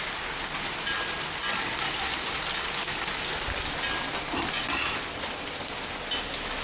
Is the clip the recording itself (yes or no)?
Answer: yes